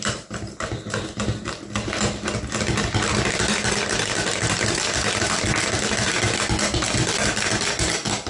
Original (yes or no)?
yes